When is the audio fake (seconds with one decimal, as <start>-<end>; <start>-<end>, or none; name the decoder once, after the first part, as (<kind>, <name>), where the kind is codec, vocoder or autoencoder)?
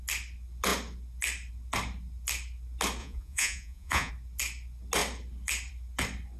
3.0-4.1 (vocoder, Vocos)